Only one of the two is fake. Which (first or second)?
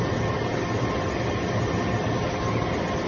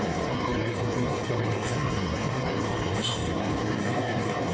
second